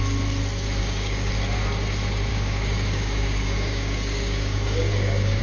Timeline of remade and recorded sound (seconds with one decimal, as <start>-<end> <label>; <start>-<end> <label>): 0.0-0.8 recorded; 0.8-1.3 remade; 1.3-2.3 recorded; 2.3-5.4 remade